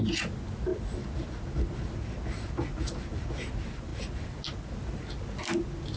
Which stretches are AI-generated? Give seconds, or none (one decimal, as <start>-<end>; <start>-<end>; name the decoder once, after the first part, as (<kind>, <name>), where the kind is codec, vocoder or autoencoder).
none